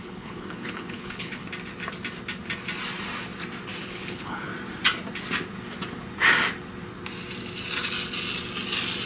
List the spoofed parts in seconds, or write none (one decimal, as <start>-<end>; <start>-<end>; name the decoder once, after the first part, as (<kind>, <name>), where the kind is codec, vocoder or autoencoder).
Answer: 0.0-1.4 (codec, HILCodec); 3.8-4.5